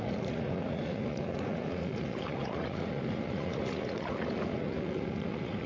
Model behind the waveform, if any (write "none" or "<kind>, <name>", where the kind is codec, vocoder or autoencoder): vocoder, Vocos